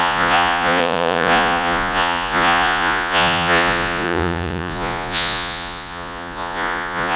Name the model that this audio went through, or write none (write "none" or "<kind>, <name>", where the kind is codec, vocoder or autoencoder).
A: vocoder, Vocos